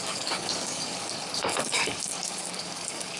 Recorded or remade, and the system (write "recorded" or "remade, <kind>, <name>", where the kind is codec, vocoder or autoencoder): remade, codec, DAC